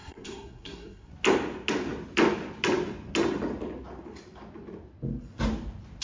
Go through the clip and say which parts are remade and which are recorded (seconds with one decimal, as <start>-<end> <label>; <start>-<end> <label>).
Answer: 0.0-1.1 remade; 1.1-6.0 recorded